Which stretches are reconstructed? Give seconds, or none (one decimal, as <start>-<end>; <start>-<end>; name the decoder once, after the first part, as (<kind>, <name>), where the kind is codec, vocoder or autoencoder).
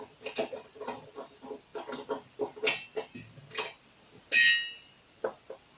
none